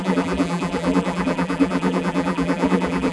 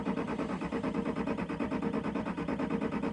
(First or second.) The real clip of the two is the second